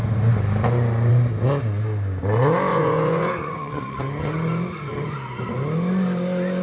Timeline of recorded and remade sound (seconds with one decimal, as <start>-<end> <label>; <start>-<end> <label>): 0.0-2.7 recorded; 2.7-4.0 remade; 4.0-6.6 recorded